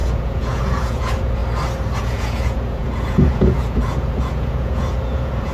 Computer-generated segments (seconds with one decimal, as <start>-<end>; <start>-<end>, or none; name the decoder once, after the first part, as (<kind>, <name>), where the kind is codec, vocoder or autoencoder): 0.0-1.4 (vocoder, Vocos); 2.0-5.5